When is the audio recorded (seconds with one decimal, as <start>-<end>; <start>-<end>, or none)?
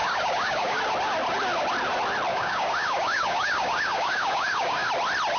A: 0.8-2.3; 4.9-5.4